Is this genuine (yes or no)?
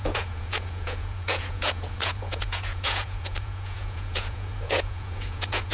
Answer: no